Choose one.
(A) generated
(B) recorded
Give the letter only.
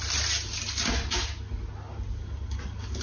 B